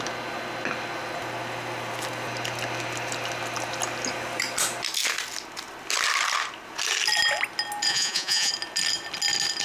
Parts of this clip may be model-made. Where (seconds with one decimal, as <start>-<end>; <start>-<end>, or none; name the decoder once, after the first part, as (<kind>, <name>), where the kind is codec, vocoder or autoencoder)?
7.9-8.5 (vocoder, Vocos)

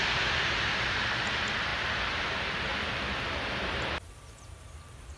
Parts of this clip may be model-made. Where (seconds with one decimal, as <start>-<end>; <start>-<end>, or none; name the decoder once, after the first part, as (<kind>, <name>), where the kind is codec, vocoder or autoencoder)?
0.0-2.7 (vocoder, BigVGAN v2); 4.3-5.2

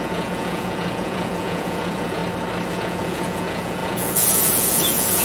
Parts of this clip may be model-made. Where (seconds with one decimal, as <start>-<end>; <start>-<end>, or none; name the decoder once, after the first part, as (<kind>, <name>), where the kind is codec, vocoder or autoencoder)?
0.0-2.2 (vocoder, Vocos); 2.7-5.2

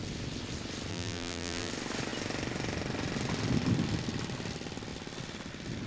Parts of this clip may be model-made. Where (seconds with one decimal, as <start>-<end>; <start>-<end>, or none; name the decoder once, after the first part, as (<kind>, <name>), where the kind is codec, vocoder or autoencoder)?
0.9-1.7 (vocoder, BigVGAN v2)

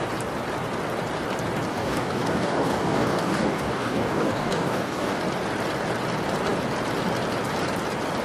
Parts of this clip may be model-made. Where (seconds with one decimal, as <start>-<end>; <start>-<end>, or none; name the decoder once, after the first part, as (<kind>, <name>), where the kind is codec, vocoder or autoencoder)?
1.7-5.2 (codec, DAC)

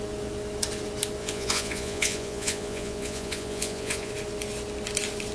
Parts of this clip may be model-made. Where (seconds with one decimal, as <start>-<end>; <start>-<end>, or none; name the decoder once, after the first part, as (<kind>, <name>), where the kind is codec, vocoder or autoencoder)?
1.2-4.1 (vocoder, Vocos)

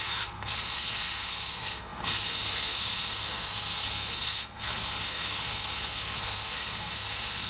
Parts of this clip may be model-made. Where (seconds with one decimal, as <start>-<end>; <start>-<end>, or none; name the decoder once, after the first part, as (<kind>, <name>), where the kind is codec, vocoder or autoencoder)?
0.0-7.5 (codec, SNAC)